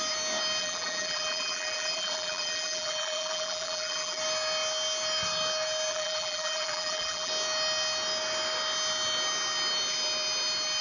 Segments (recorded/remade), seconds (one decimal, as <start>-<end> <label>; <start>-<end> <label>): 0.0-0.6 recorded; 0.6-4.2 remade; 4.2-5.9 recorded; 5.9-7.3 remade; 7.3-10.8 recorded